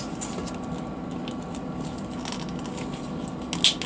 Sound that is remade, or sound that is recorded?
recorded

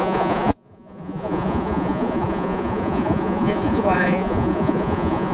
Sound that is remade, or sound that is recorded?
remade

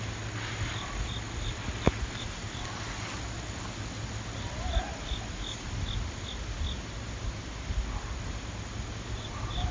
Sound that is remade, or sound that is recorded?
recorded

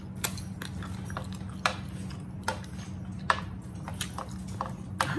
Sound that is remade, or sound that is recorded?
recorded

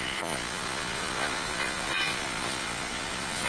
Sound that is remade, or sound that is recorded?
remade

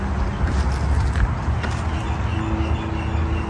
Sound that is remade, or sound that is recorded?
recorded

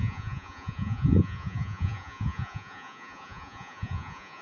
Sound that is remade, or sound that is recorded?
remade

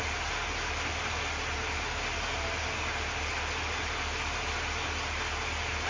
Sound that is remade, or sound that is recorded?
recorded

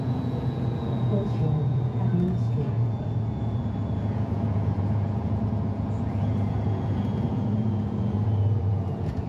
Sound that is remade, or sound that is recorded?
remade